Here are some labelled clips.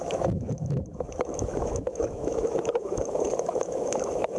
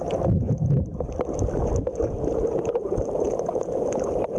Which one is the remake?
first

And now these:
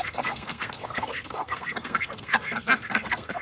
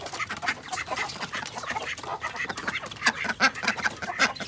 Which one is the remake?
first